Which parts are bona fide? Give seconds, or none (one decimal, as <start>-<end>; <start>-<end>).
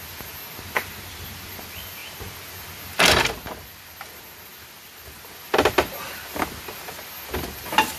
0.0-8.0